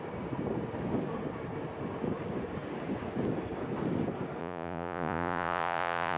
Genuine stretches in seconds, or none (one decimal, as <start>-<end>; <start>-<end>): 0.0-4.4